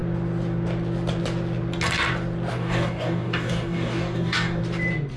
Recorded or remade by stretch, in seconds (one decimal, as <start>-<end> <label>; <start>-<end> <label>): 0.0-2.5 recorded; 2.5-4.6 remade; 4.6-5.2 recorded